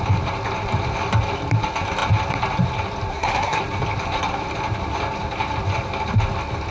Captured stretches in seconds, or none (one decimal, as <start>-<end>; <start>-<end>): 0.0-3.1; 3.6-6.7